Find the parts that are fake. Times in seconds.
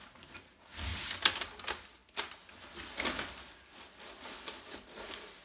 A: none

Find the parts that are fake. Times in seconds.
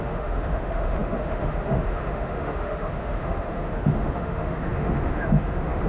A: 0.0-5.9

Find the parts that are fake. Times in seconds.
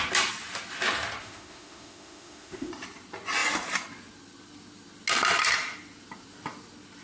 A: 1.2-2.7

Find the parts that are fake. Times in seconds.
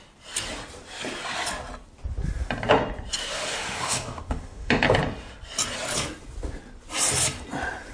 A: 3.2-4.7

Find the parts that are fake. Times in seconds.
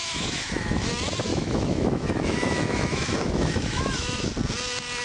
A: 0.0-0.9; 1.3-4.3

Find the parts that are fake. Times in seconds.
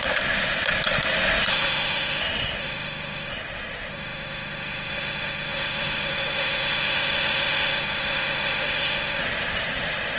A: 1.5-2.2; 2.6-3.3; 3.9-9.2